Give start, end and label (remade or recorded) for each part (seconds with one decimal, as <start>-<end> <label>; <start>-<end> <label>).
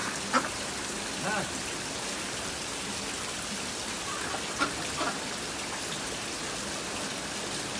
0.0-7.8 recorded